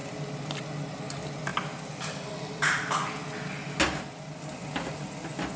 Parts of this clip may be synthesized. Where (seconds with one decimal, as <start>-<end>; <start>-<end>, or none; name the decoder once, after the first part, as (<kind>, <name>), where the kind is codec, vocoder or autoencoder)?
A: none